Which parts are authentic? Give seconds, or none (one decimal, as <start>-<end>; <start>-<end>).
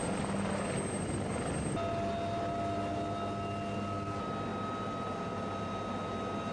0.0-6.5